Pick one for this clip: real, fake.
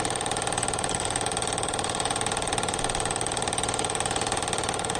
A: real